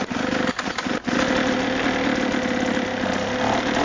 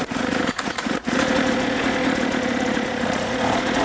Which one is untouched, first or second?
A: first